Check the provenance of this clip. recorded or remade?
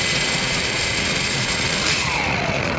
remade